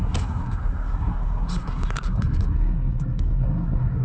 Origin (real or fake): fake